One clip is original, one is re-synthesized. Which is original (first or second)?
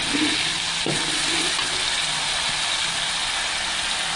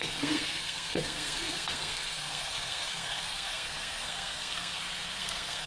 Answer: first